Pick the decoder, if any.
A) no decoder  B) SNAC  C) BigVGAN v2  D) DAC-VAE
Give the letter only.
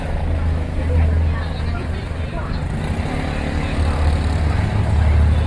A